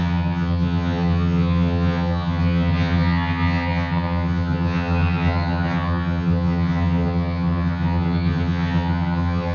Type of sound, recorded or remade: remade